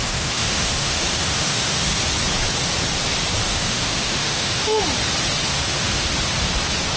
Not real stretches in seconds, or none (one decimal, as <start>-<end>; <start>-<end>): 0.0-2.0; 3.4-4.8; 5.4-6.1